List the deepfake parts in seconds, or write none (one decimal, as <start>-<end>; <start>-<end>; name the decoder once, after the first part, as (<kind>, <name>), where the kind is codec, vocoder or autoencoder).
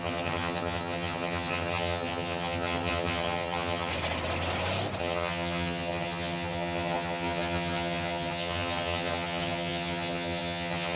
0.0-3.9 (vocoder, HiFi-GAN); 5.0-11.0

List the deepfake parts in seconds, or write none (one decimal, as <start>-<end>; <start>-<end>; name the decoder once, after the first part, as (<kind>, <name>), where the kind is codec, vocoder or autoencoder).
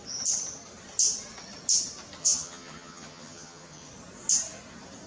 2.2-3.9 (vocoder, HiFi-GAN)